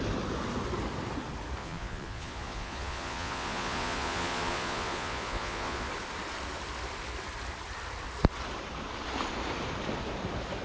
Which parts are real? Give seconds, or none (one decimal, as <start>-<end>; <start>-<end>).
0.0-1.6; 5.9-10.6

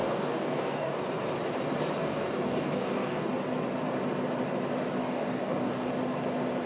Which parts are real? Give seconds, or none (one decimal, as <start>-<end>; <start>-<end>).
1.0-2.0; 3.3-5.0; 5.9-6.7